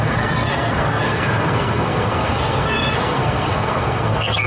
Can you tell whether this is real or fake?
fake